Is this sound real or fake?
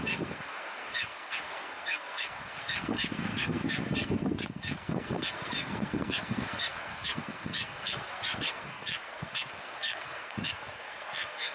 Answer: fake